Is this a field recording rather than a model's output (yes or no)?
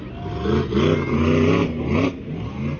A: yes